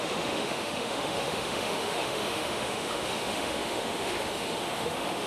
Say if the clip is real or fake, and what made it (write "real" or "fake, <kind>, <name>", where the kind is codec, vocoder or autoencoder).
fake, autoencoder, DAC-VAE